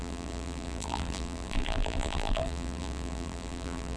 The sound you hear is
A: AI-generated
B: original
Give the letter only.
A